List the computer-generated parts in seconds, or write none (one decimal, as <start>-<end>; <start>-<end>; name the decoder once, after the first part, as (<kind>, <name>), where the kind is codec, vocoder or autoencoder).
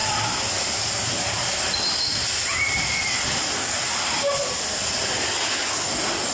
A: 0.0-3.8 (vocoder, BigVGAN v2)